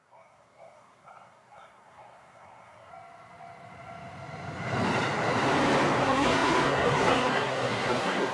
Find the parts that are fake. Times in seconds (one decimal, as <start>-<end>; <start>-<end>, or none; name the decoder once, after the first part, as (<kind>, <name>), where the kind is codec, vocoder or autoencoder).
0.0-2.9 (codec, SNAC); 6.0-8.3

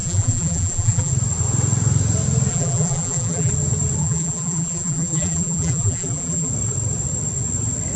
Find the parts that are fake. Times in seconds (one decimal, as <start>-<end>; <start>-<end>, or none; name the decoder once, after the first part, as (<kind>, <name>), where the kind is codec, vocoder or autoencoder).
0.0-1.1 (vocoder, BigVGAN v2); 2.5-3.5; 4.0-6.5

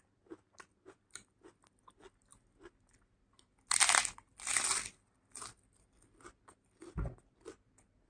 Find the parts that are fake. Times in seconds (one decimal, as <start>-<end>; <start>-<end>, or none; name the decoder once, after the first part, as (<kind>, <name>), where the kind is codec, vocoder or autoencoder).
none

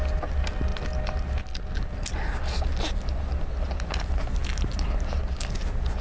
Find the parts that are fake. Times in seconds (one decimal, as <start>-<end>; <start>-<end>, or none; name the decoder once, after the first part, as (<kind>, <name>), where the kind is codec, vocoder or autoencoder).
none